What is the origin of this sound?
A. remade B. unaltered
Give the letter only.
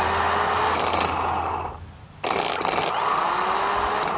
B